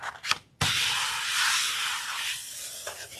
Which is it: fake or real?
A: real